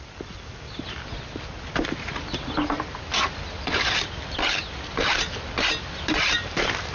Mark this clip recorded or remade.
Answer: recorded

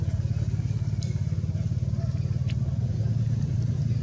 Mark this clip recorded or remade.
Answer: recorded